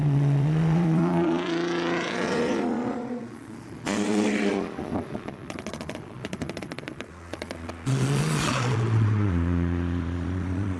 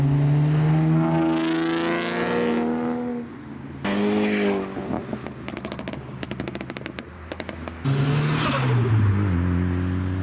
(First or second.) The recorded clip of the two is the second